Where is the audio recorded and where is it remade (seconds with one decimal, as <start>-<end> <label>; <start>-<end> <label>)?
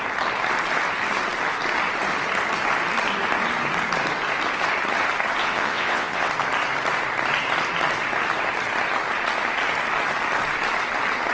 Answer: 0.0-5.4 recorded; 5.4-6.3 remade; 6.3-11.3 recorded